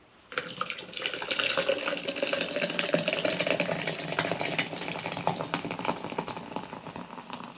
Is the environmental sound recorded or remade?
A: recorded